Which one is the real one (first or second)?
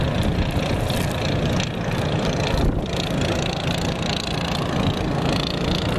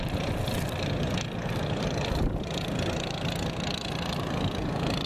first